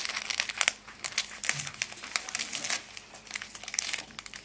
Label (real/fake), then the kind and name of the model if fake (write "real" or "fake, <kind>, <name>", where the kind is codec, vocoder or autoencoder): real